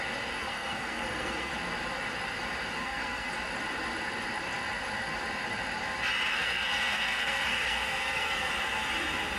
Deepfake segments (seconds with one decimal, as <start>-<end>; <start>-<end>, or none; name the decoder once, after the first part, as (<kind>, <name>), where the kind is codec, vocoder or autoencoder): 0.4-1.5 (codec, SNAC); 2.8-3.3; 6.3-8.5